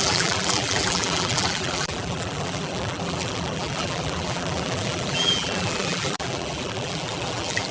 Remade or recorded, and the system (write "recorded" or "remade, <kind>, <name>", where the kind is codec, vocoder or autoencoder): remade, vocoder, BigVGAN v2